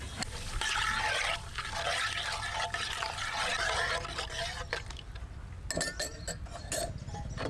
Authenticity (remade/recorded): recorded